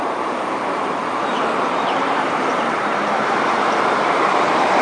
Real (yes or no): no